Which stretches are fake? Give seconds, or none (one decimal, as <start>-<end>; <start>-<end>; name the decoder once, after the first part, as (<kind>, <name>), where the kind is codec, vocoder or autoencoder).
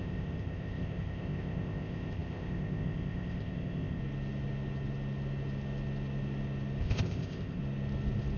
0.0-4.0 (codec, ZipCodec); 6.8-7.6